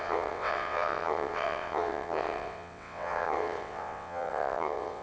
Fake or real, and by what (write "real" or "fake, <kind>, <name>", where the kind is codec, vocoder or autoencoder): fake, vocoder, WaveNeXt